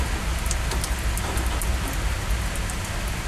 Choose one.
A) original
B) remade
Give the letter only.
A